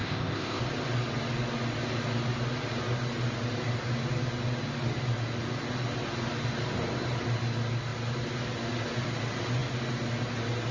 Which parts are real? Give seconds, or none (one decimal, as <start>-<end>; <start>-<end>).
0.6-10.7